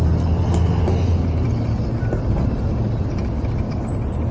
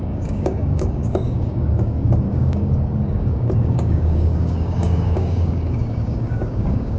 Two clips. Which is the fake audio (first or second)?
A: second